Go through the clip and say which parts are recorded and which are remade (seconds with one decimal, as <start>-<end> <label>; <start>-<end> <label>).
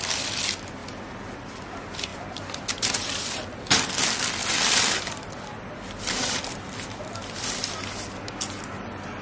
0.0-0.8 recorded; 0.8-1.6 remade; 1.6-4.4 recorded; 4.4-8.2 remade; 8.2-9.2 recorded